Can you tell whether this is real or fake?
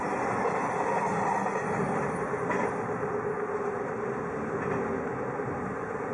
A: real